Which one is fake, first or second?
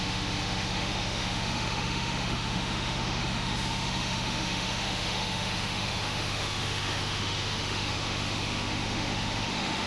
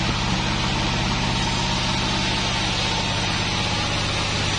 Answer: first